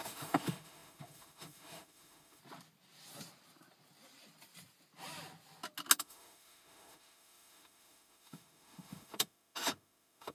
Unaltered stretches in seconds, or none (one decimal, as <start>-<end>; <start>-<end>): 2.4-6.0